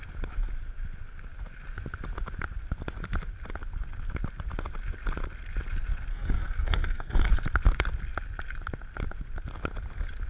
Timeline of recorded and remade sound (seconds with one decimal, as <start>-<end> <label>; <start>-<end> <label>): 0.0-6.1 recorded; 6.1-7.3 remade; 7.3-10.3 recorded